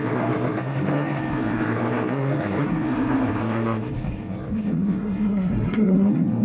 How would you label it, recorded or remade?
remade